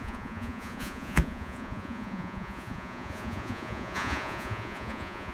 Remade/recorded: remade